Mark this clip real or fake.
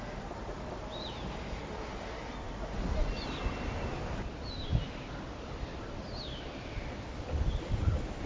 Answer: real